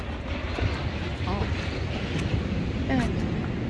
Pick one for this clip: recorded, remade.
recorded